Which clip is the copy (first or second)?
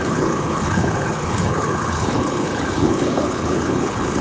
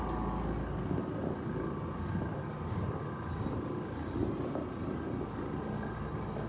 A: first